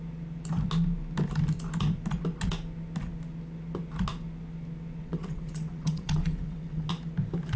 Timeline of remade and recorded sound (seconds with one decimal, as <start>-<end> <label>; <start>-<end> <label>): 0.0-5.0 recorded; 5.0-6.9 remade; 6.9-7.6 recorded